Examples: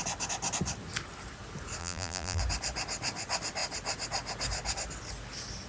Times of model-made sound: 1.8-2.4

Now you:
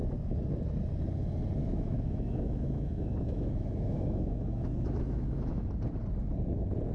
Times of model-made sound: 1.6-5.7